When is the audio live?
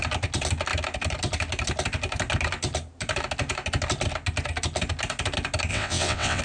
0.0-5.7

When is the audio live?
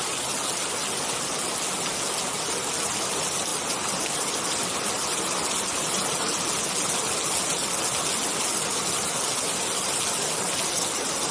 0.0-11.3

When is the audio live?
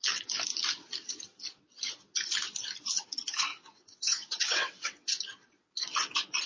0.0-3.5; 5.2-6.5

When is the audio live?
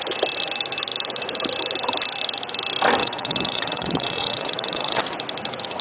0.0-3.0; 5.0-5.8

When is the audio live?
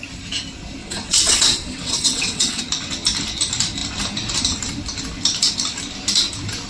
0.0-0.8; 2.6-6.7